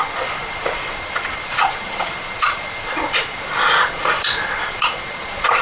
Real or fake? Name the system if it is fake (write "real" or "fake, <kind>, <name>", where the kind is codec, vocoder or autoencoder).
fake, vocoder, Vocos